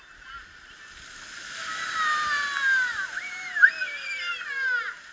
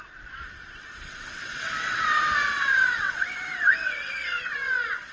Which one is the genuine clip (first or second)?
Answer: first